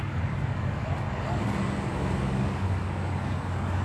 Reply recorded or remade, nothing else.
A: remade